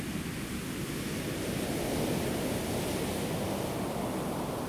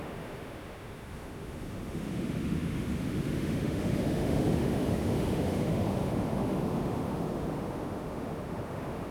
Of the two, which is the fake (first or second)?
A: second